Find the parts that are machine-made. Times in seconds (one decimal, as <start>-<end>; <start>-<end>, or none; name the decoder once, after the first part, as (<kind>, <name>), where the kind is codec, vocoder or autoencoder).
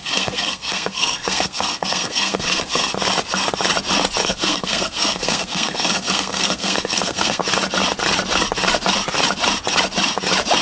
0.0-2.9 (codec, SNAC); 4.2-7.4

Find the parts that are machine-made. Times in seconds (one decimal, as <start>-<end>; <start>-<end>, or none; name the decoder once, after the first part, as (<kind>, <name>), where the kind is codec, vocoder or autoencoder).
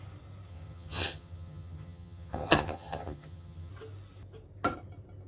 0.5-3.7 (vocoder, HiFi-GAN)